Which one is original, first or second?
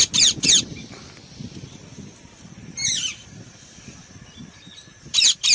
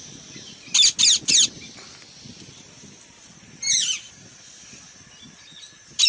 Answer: second